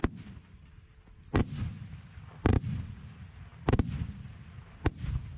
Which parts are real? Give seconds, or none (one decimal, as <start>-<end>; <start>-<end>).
0.0-1.6; 3.5-5.4